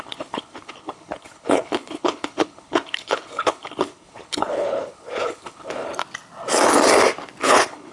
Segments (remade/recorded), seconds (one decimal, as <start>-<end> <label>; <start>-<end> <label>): 0.0-5.9 remade; 5.9-7.4 recorded; 7.4-7.9 remade